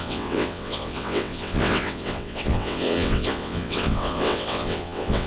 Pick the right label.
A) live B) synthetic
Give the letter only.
B